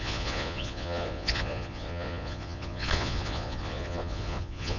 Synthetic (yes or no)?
yes